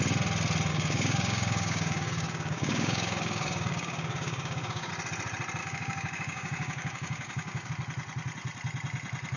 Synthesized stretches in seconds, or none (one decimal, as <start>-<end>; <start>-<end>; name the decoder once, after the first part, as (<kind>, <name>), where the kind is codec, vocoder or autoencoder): 0.7-4.9 (codec, DAC); 5.6-7.7